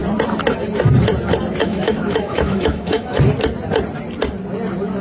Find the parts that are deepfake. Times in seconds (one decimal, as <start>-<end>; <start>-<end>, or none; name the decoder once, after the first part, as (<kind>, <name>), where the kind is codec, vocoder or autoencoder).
1.6-3.2 (autoencoder, DAC-VAE)